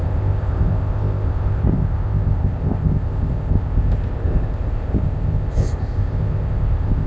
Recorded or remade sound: remade